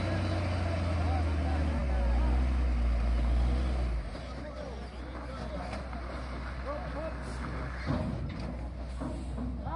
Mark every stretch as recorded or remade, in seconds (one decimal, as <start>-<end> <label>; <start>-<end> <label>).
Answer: 0.0-9.8 recorded